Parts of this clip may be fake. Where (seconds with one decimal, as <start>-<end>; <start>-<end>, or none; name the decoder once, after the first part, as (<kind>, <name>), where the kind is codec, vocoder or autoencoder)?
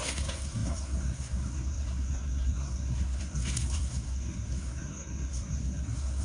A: 0.0-6.2 (codec, SNAC)